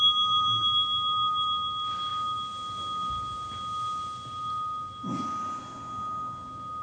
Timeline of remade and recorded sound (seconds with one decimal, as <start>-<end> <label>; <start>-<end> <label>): 0.0-6.8 recorded